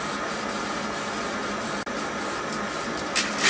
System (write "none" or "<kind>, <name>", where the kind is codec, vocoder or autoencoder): none